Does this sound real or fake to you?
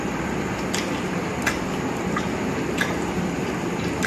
real